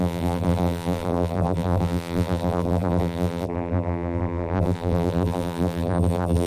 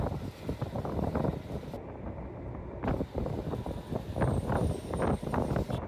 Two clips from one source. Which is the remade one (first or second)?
first